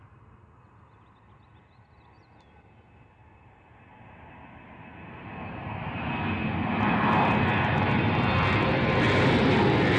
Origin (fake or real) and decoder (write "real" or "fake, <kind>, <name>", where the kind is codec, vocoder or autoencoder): real